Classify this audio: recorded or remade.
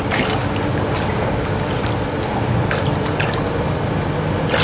recorded